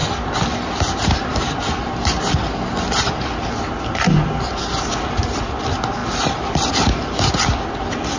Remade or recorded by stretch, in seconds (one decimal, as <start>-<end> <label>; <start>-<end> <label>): 0.0-1.3 remade; 1.3-6.0 recorded; 6.0-6.7 remade; 6.7-8.2 recorded